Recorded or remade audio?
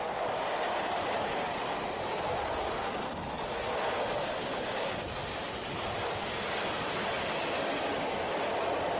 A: recorded